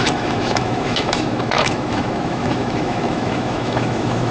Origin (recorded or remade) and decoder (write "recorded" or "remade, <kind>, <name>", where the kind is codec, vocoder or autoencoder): remade, autoencoder, DAC-VAE